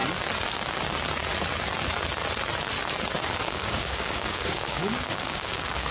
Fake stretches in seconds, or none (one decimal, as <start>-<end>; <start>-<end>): 3.5-5.9